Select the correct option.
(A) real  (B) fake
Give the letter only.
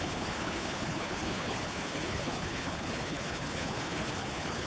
B